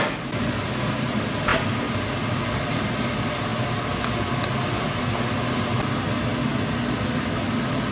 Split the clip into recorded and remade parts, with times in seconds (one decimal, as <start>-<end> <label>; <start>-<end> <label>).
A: 0.0-7.9 recorded